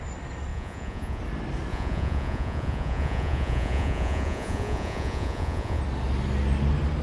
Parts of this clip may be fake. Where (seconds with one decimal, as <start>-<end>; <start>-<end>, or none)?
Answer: 0.5-1.2; 1.7-5.8

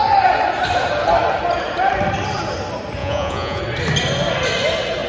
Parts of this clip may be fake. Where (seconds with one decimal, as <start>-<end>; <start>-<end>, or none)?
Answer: 3.0-3.6

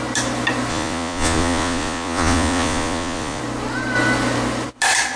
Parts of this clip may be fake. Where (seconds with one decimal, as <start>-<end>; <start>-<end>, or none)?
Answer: 0.7-3.4

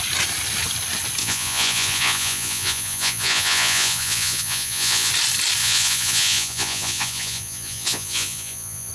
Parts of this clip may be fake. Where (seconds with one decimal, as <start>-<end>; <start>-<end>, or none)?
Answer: 1.2-5.1; 5.6-8.9

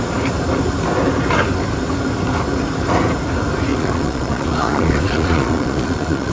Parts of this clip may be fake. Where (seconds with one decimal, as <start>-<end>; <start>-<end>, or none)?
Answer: 3.7-6.3

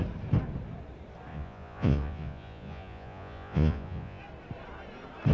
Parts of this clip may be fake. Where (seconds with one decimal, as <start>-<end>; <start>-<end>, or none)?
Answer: 1.3-4.2

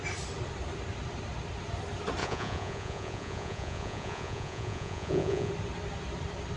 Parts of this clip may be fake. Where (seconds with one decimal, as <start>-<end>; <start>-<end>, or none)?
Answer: 2.2-5.5